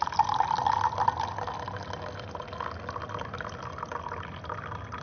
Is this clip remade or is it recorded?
recorded